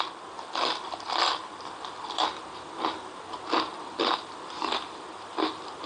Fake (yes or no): no